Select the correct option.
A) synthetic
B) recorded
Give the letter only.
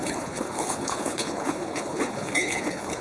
A